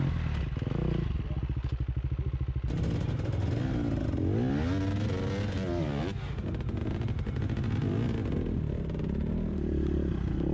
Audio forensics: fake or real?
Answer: real